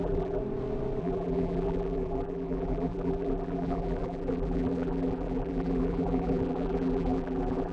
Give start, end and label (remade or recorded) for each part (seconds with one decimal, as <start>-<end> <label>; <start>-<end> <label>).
0.0-0.4 remade; 0.4-1.0 recorded; 1.0-7.7 remade